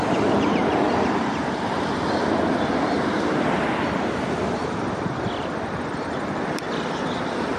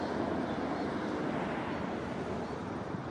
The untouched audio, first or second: second